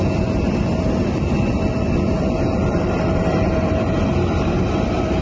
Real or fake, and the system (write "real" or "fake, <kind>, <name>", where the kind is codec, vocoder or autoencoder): fake, vocoder, BigVGAN v2